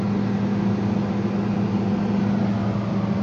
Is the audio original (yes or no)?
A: yes